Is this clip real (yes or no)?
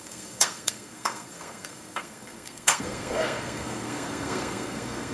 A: no